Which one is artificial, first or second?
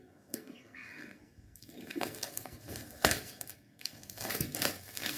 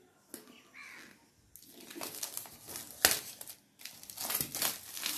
first